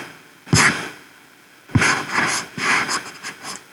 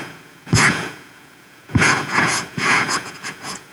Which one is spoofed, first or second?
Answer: second